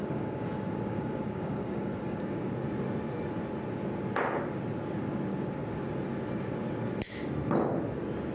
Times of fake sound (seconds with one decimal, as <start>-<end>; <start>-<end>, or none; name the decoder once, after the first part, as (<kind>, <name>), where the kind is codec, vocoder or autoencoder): 0.0-2.5 (codec, DAC)